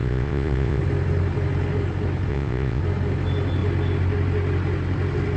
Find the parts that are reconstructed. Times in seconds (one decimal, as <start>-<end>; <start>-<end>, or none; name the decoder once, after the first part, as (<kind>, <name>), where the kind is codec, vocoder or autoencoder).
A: 0.0-0.8 (vocoder, Vocos); 2.3-2.8